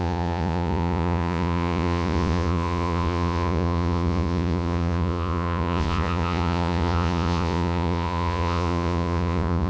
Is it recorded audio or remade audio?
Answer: remade